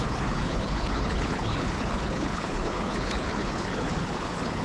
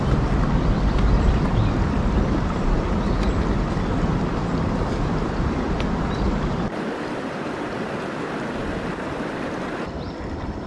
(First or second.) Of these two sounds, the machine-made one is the first